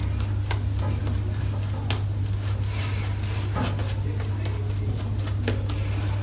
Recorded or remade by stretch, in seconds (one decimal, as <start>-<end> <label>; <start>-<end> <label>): 0.0-6.2 recorded